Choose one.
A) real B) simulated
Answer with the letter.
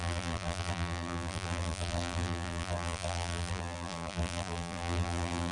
B